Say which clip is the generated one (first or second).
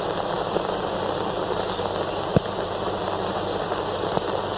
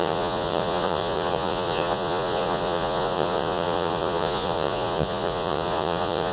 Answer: second